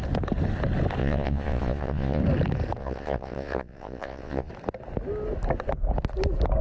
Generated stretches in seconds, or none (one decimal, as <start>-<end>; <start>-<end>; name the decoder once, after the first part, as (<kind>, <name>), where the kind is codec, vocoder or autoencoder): 1.0-2.2 (vocoder, Vocos); 2.8-4.5